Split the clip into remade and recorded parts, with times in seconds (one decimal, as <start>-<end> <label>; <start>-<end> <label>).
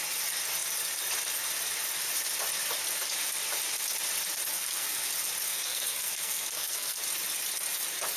0.0-4.5 recorded; 4.5-5.1 remade; 5.1-5.5 recorded; 5.5-7.0 remade; 7.0-8.2 recorded